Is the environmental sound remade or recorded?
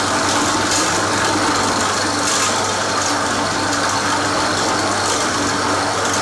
recorded